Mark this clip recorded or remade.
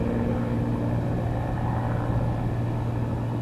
recorded